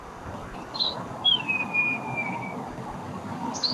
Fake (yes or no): yes